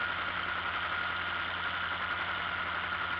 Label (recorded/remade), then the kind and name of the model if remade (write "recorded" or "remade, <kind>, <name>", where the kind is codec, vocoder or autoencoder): recorded